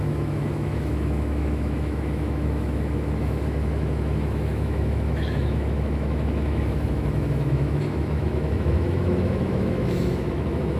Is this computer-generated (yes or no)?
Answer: yes